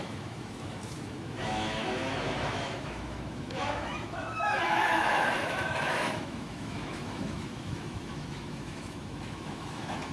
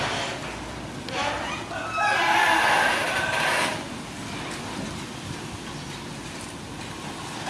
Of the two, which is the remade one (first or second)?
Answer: first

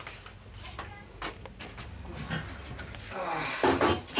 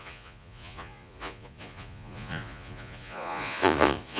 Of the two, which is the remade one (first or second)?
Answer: second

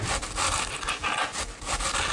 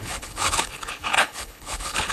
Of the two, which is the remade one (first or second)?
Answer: second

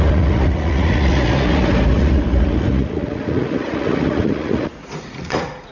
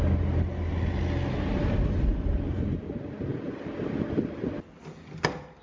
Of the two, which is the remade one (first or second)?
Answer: first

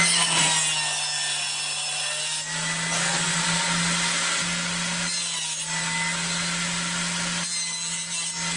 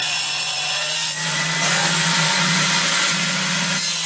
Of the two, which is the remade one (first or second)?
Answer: second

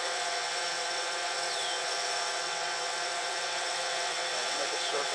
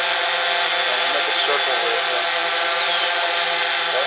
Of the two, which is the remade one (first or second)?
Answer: first